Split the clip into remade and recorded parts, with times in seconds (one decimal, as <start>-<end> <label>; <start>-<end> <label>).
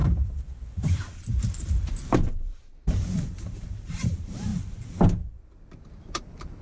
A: 0.0-4.5 remade; 4.5-6.0 recorded; 6.0-6.6 remade